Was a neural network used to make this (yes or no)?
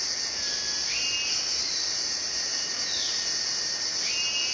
no